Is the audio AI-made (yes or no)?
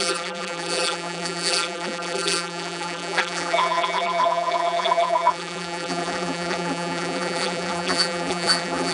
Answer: yes